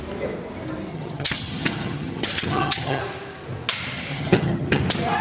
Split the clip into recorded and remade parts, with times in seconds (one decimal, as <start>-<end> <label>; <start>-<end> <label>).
0.0-0.9 recorded; 0.9-3.0 remade; 3.0-4.1 recorded; 4.1-4.8 remade; 4.8-5.2 recorded